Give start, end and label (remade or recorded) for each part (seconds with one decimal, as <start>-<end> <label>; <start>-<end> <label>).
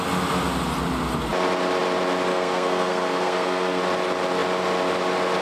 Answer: 0.0-2.3 recorded; 2.3-3.8 remade; 3.8-5.4 recorded